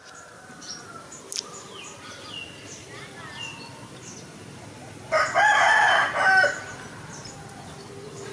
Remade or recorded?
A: recorded